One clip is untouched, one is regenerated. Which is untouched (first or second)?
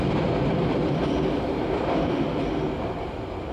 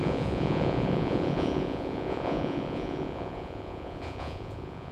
first